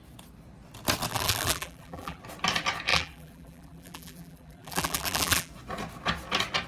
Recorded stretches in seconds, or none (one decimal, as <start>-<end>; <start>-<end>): 0.0-1.1; 2.2-2.9; 5.5-6.7